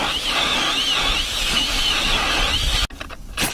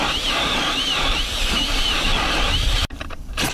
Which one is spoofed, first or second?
second